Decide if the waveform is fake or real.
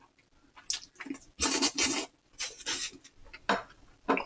real